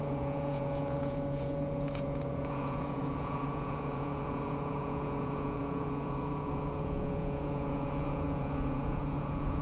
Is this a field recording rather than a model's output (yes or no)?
no